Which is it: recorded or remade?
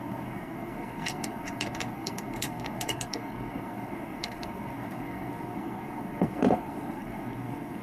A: remade